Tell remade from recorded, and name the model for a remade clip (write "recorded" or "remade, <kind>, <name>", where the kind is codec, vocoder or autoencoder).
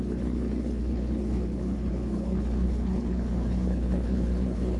remade, codec, HILCodec